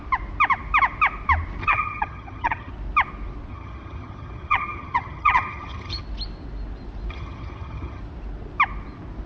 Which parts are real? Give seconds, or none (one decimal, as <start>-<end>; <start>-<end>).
0.0-1.6; 2.7-3.5; 6.0-7.1; 8.0-9.3